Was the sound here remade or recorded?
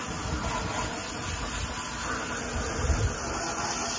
recorded